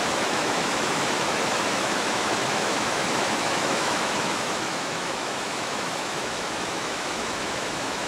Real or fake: fake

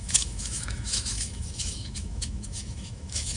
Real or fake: fake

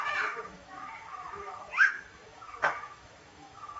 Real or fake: fake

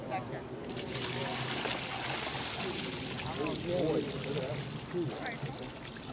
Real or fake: real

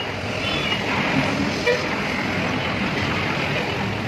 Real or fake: real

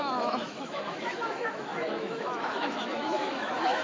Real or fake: fake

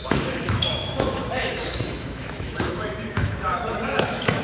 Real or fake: fake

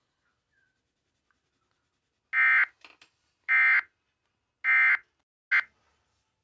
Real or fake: real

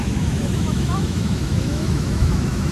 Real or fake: fake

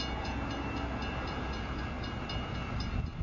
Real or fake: real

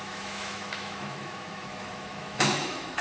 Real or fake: fake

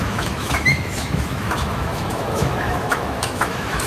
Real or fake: fake